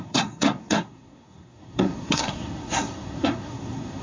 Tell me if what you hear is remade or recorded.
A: remade